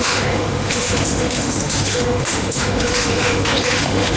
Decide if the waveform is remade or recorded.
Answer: remade